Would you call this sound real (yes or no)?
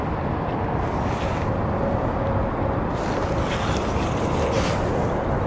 yes